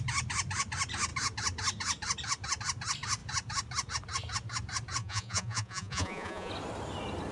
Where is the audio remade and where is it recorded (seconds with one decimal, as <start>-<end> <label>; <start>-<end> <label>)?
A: 0.0-5.0 recorded; 5.0-6.5 remade; 6.5-7.3 recorded